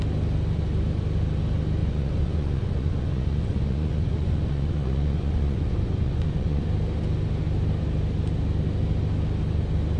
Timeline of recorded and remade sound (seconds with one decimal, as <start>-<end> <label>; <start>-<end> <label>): 0.0-1.8 recorded; 1.8-6.6 remade; 6.6-10.0 recorded